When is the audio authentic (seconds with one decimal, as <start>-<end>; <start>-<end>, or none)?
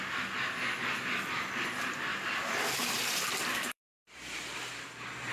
0.0-2.1